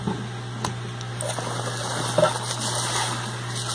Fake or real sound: real